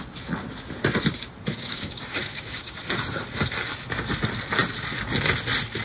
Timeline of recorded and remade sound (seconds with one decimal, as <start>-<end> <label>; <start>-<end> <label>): 0.0-1.5 recorded; 1.5-2.8 remade; 2.8-5.8 recorded